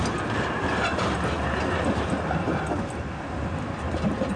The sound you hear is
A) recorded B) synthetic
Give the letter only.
A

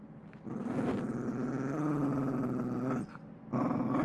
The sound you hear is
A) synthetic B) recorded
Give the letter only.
B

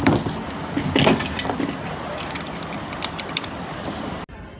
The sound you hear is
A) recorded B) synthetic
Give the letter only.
A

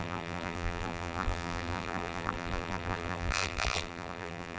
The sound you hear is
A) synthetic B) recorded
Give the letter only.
A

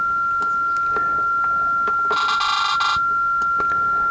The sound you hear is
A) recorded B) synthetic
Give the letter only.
A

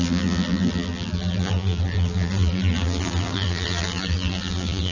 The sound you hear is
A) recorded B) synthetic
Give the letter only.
B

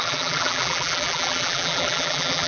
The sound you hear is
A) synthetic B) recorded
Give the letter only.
A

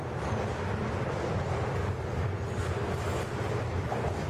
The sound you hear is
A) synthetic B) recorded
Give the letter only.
B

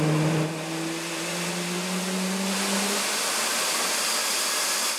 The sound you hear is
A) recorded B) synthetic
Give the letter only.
A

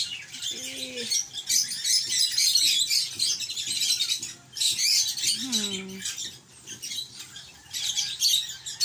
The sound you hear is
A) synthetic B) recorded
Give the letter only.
B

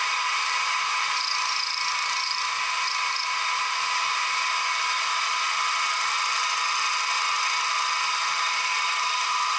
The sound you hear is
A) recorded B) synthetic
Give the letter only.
B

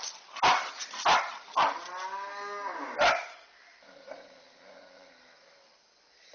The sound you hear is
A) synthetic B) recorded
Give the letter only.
B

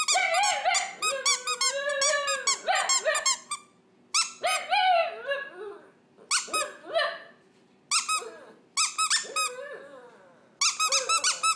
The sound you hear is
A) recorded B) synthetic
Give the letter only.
A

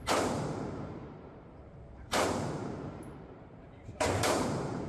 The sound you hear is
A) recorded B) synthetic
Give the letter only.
B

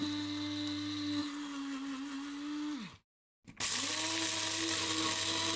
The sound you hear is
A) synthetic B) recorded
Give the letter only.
B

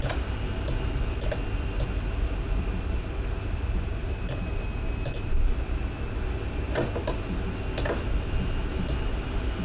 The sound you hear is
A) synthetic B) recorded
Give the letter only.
B